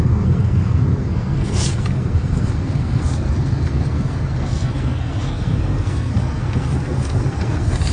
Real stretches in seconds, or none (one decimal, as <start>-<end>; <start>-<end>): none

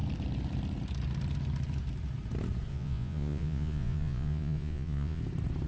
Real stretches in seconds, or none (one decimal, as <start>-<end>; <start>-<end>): 0.0-2.7; 5.2-5.7

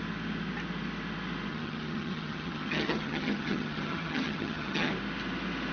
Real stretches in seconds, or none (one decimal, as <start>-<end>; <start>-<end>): 0.0-1.5; 4.9-5.7

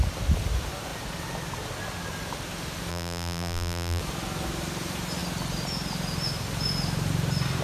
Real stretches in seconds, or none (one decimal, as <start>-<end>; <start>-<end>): 0.0-2.9; 4.0-7.6

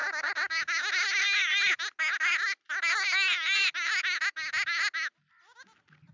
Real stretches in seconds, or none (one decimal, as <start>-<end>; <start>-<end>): 0.0-6.1